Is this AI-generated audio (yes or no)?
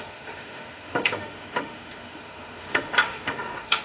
yes